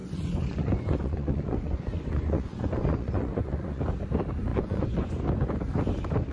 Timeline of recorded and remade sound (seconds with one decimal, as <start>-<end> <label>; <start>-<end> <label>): 0.0-3.8 remade; 3.8-4.5 recorded; 4.5-5.1 remade; 5.1-6.3 recorded